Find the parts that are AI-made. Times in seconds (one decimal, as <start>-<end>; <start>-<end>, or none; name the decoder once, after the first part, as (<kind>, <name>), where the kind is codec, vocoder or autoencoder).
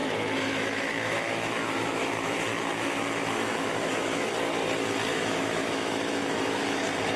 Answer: 0.0-4.3 (autoencoder, DAC-VAE); 5.1-6.8